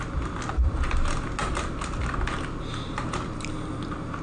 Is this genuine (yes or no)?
no